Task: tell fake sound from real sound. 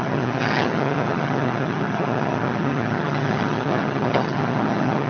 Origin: fake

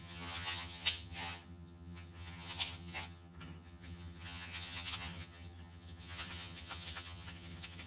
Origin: fake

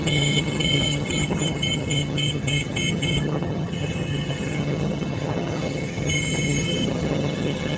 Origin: fake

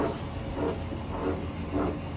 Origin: real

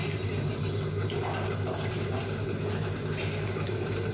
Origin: real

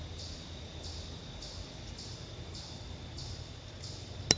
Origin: real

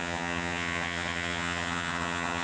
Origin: fake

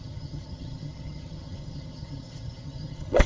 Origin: fake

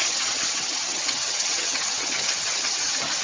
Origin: fake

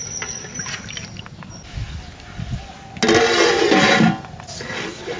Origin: real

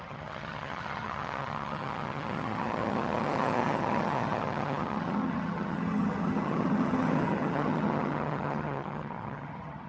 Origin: fake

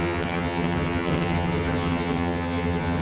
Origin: fake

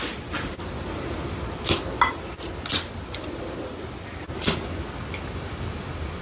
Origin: real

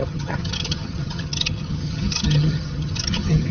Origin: fake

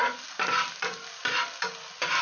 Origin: real